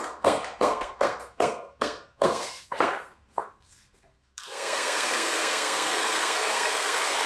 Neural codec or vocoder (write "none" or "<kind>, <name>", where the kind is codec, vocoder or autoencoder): codec, SNAC